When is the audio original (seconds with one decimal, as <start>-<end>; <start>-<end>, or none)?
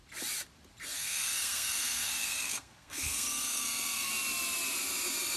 0.0-0.9; 4.1-5.4